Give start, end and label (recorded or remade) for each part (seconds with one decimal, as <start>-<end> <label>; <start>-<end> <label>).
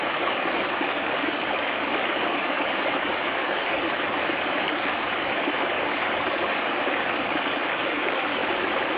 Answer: 0.0-8.4 remade; 8.4-9.0 recorded